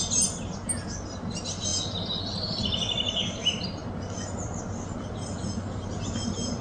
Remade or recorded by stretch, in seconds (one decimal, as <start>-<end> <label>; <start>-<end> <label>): 0.0-6.6 recorded